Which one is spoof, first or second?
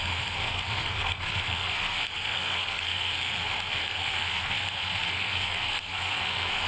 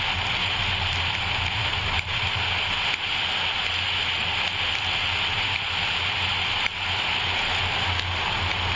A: first